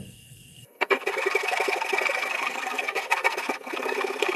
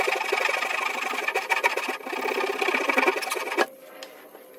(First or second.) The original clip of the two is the second